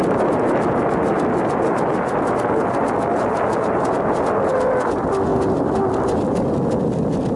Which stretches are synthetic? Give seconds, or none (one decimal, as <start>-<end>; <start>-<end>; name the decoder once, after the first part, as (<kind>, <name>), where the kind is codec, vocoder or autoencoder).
none